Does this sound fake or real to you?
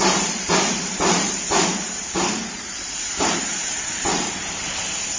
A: fake